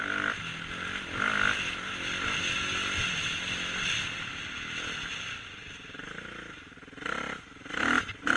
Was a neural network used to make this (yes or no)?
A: no